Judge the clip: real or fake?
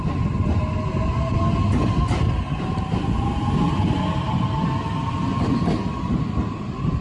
real